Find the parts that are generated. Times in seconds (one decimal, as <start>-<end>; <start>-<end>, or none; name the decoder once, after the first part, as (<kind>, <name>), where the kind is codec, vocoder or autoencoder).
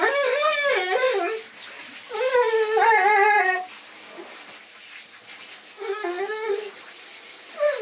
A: 5.5-6.7 (codec, SNAC)